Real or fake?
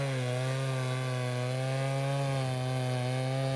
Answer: real